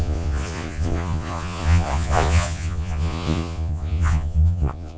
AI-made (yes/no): yes